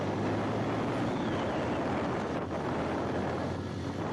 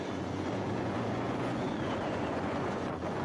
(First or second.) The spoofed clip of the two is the second